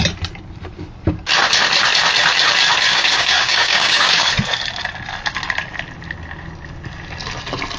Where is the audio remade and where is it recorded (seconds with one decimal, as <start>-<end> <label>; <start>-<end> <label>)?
0.0-2.9 recorded; 2.9-4.3 remade; 4.3-7.8 recorded